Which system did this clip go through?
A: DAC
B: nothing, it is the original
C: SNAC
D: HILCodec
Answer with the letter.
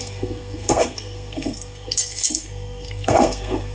C